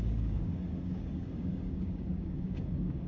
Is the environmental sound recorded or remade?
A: remade